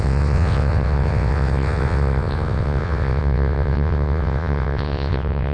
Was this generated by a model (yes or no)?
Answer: yes